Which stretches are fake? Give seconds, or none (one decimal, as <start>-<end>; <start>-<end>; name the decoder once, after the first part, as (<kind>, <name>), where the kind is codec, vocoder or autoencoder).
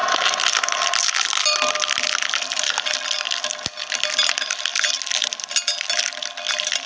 none